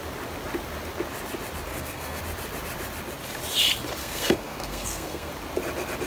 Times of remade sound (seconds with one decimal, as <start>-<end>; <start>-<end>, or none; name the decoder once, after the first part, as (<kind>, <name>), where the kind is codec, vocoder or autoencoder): 1.7-2.2 (codec, SNAC); 4.0-5.3